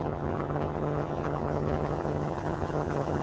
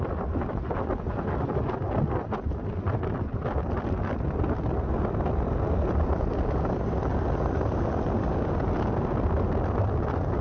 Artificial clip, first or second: first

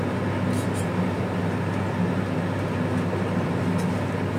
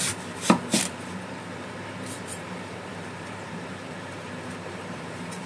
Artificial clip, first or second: second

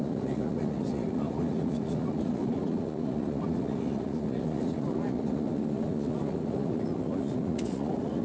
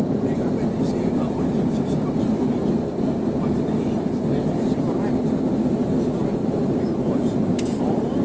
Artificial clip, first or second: first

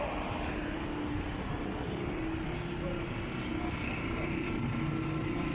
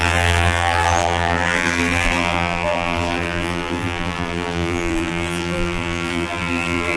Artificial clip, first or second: second